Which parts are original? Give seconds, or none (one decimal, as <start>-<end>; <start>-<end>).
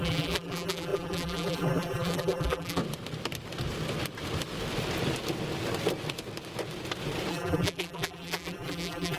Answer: 2.8-7.3